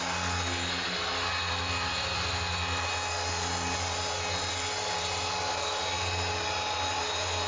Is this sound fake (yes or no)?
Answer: no